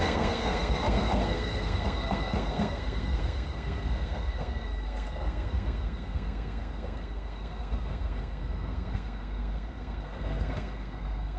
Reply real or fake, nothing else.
fake